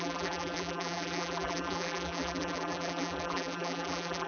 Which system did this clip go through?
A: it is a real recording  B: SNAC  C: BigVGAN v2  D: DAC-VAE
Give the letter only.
C